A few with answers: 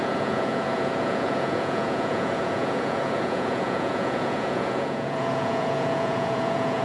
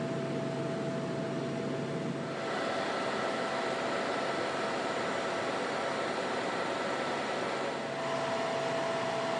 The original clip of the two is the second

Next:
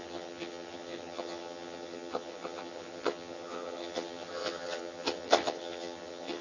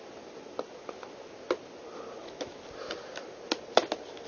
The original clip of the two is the second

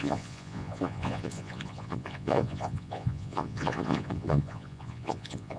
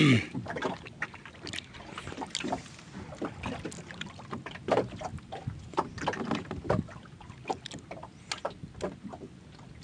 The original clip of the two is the second